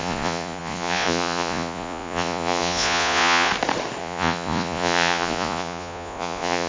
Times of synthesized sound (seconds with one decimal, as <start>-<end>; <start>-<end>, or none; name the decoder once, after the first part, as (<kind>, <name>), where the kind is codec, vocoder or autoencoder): 0.0-3.5 (vocoder, Vocos); 4.0-6.7

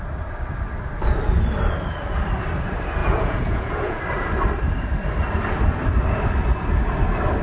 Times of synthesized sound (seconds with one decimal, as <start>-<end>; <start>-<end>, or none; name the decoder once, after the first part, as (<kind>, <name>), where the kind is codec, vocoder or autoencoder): 3.0-4.0 (vocoder, Vocos)

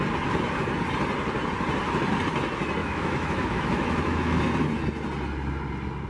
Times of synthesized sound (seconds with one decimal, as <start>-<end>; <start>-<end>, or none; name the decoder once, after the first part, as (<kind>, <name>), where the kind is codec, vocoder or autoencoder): 2.8-4.4 (autoencoder, DAC-VAE)

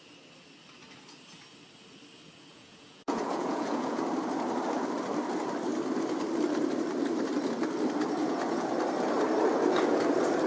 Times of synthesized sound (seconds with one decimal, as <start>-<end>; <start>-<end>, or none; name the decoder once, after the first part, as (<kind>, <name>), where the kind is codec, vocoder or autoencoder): 2.5-4.0 (vocoder, Vocos); 8.2-8.7